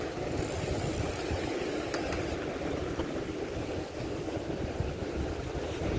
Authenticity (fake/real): real